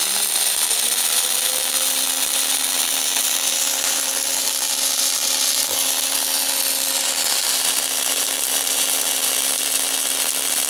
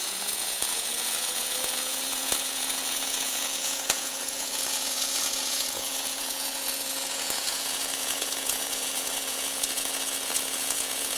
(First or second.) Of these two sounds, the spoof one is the second